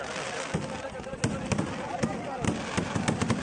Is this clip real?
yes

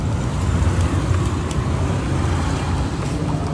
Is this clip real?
yes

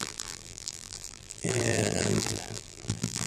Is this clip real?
no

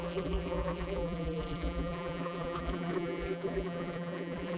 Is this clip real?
no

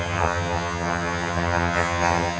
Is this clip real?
no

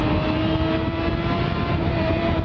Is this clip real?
no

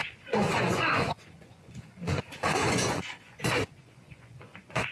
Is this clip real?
no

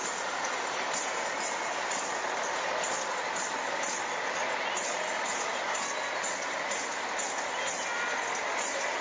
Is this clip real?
yes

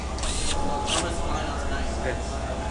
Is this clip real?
yes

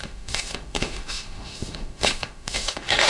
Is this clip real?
no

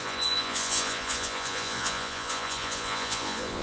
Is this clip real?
no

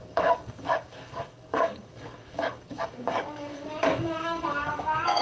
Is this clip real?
no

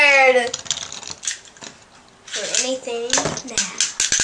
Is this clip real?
yes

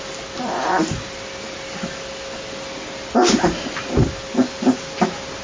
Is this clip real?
yes